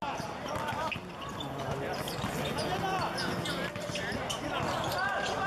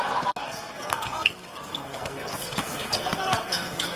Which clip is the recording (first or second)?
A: first